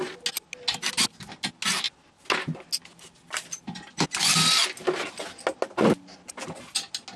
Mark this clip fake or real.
real